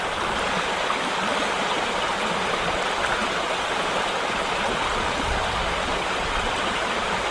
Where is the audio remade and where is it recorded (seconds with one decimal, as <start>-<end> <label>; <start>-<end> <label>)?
0.0-7.3 recorded